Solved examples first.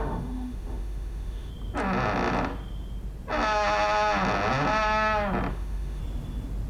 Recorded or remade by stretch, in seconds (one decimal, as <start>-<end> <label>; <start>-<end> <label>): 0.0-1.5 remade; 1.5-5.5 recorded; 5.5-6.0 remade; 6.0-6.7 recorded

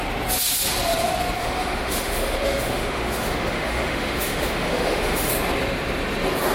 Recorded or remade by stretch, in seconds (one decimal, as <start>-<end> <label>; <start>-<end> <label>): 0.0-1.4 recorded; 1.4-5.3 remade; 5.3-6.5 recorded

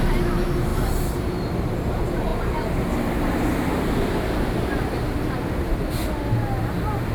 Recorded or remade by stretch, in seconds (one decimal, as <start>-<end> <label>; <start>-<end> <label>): 0.0-0.7 recorded; 0.7-1.6 remade; 1.6-7.1 recorded

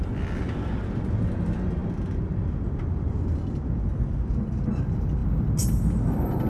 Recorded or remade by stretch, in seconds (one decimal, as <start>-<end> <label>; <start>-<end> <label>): 0.0-6.5 recorded

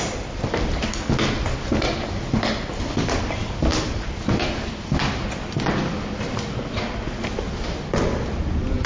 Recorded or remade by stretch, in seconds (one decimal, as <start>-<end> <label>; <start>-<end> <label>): 0.0-8.9 recorded

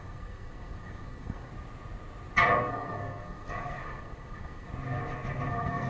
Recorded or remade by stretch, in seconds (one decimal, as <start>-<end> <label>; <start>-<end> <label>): 0.0-1.5 remade; 1.5-2.6 recorded; 2.6-4.7 remade; 4.7-5.5 recorded; 5.5-5.9 remade